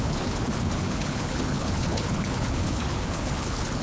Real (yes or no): no